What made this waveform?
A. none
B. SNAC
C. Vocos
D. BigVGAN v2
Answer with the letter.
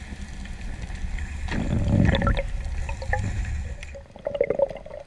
A